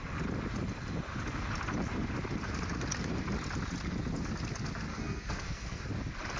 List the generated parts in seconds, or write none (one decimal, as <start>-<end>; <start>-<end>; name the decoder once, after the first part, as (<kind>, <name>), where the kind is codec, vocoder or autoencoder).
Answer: 4.9-5.8 (codec, SNAC)